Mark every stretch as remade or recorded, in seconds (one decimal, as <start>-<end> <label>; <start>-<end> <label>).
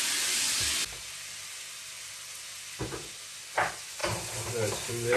0.0-5.2 recorded